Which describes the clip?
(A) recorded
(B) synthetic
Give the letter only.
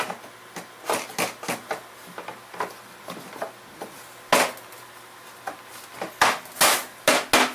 A